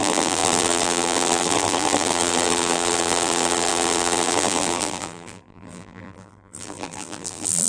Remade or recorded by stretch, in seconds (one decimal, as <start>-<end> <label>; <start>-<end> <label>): 0.0-7.7 remade